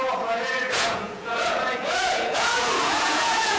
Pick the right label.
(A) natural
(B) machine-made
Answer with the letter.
B